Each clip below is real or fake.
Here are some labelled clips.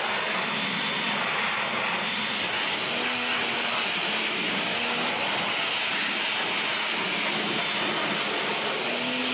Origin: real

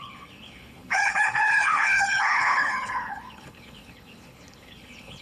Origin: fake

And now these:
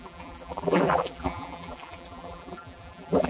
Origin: fake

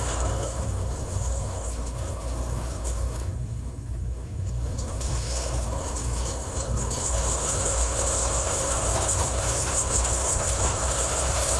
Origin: fake